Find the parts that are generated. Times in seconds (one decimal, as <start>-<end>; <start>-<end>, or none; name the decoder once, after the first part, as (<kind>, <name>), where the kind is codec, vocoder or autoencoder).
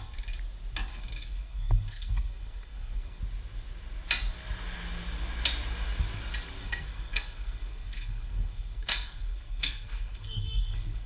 0.9-3.2 (codec, SNAC); 6.6-11.1